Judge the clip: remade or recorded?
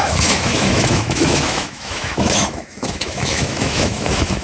remade